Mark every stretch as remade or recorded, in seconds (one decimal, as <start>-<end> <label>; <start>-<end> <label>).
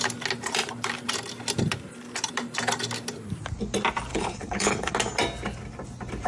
0.0-4.1 recorded; 4.1-4.9 remade; 4.9-6.3 recorded